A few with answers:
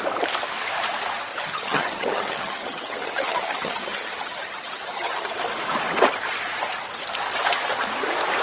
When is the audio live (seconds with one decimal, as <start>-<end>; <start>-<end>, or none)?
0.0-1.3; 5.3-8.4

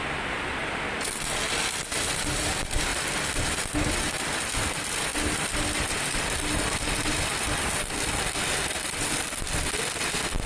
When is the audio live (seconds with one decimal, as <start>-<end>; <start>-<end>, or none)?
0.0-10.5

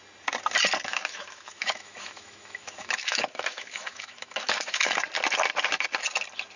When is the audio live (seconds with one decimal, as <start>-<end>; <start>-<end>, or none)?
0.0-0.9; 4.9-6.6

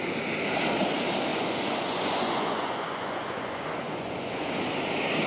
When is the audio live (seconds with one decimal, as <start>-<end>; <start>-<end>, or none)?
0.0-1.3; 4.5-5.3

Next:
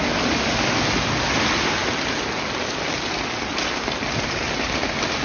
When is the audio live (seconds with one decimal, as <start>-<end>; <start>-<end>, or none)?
0.0-5.2